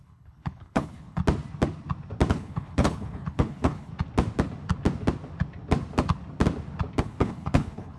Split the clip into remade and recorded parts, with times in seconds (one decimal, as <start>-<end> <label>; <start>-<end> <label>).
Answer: 0.0-1.2 remade; 1.2-2.3 recorded; 2.3-3.9 remade; 3.9-7.0 recorded; 7.0-8.0 remade